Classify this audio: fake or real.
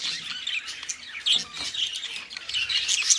real